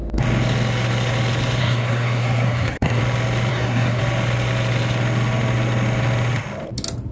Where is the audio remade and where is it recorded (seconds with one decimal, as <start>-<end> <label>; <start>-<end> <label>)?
0.0-1.6 recorded; 1.6-3.0 remade; 3.0-3.5 recorded; 3.5-4.0 remade; 4.0-7.1 recorded

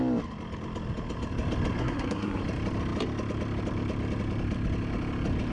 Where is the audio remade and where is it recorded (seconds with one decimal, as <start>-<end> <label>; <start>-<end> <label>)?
0.0-1.8 recorded; 1.8-2.4 remade; 2.4-5.5 recorded